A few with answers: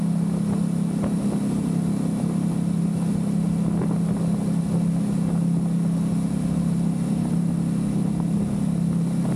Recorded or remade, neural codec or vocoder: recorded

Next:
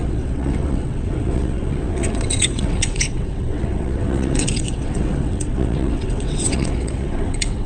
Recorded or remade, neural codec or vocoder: remade, vocoder, WaveNeXt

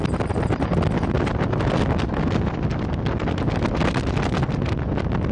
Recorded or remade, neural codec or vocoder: recorded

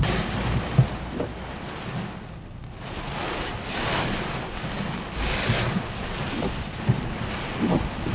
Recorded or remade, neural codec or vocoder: recorded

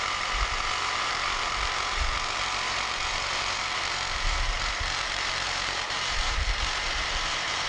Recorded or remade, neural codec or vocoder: remade, vocoder, BigVGAN v2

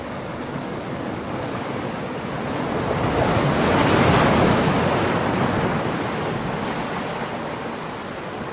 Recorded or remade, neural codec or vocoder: recorded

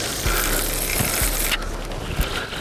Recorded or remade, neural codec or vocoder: recorded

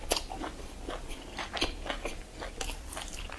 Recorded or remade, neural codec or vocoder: recorded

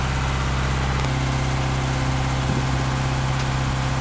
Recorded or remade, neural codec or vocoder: recorded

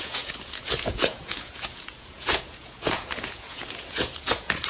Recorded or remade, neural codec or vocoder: remade, vocoder, Vocos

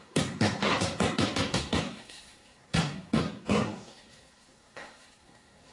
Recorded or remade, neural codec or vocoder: remade, codec, SNAC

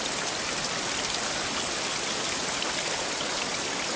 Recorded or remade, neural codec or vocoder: recorded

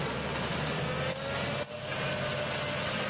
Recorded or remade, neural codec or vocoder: recorded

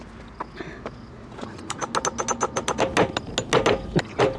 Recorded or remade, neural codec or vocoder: recorded